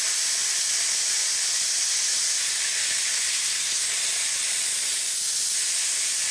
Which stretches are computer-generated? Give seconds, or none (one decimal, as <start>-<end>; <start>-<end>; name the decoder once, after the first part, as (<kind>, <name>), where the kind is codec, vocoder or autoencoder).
3.1-3.9 (codec, SNAC)